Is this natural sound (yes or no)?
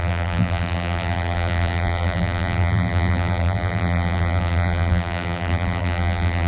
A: no